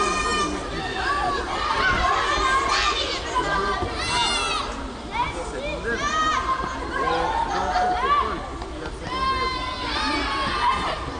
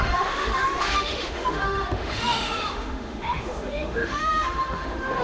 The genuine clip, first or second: first